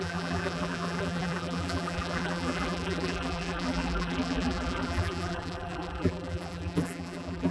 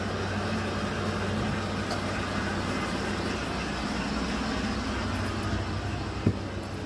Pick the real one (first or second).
second